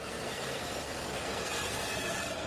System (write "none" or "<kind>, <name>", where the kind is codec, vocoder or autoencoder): codec, SNAC